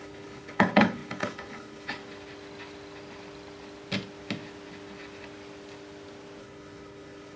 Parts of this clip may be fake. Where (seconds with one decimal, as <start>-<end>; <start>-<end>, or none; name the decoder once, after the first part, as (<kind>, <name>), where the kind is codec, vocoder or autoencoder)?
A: 0.0-2.0 (codec, HILCodec); 6.4-7.4